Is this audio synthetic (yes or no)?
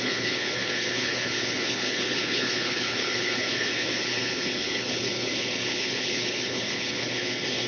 yes